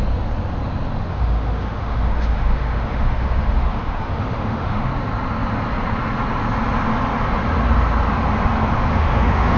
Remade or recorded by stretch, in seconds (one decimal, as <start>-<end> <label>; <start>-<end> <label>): 0.0-1.1 recorded; 1.1-4.9 remade; 4.9-8.9 recorded; 8.9-9.6 remade